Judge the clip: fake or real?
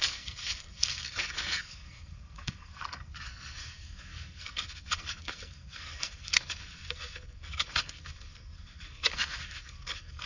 fake